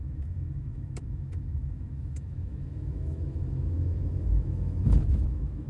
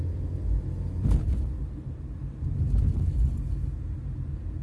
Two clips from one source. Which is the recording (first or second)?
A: second